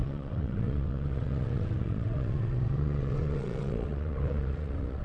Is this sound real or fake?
fake